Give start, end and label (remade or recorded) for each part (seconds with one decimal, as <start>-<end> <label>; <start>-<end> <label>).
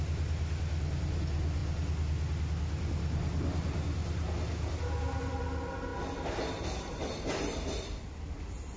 0.0-8.8 recorded